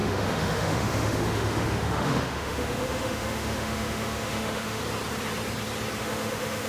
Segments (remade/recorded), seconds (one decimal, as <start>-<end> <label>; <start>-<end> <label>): 0.0-4.8 remade; 4.8-6.0 recorded; 6.0-6.7 remade